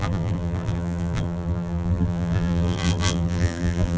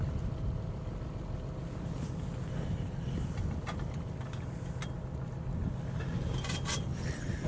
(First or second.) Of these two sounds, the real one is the second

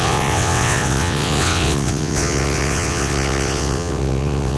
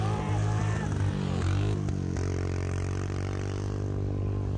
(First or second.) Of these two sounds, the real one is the second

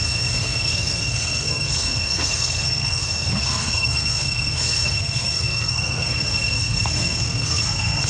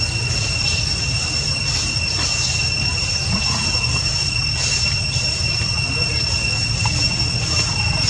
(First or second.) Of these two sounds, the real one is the second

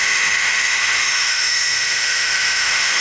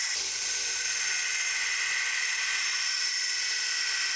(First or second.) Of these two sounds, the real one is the second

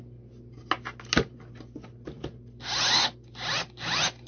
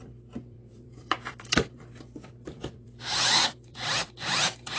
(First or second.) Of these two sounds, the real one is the first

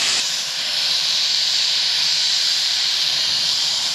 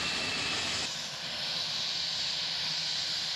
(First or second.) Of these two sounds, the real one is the second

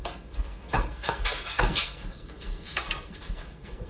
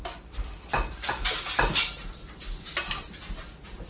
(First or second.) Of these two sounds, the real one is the second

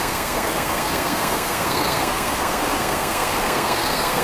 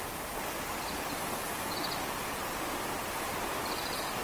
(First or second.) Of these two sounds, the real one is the second